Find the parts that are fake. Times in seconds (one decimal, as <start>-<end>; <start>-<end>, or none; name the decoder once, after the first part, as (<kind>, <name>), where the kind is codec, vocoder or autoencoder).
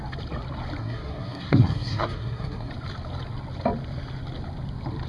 0.8-2.7 (codec, SNAC)